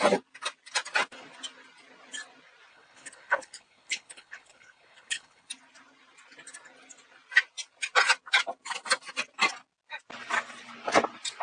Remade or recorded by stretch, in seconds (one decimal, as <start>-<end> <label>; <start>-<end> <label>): 0.0-2.7 recorded; 2.7-5.5 remade; 5.5-11.4 recorded